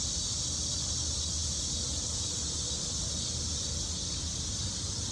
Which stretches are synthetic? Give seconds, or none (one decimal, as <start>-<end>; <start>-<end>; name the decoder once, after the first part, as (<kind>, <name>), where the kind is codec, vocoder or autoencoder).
none